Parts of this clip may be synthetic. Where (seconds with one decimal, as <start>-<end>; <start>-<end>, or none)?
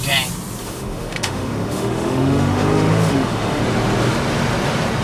0.6-3.6